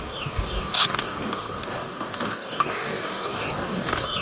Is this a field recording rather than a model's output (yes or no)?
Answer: no